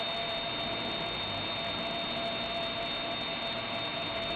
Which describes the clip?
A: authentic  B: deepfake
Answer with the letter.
A